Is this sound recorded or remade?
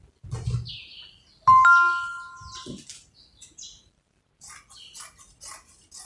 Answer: recorded